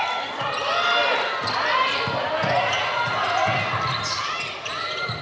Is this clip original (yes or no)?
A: yes